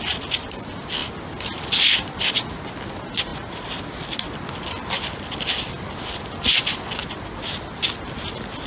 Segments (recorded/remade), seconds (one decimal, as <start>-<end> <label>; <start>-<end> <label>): 0.0-7.0 recorded; 7.0-7.9 remade; 7.9-8.7 recorded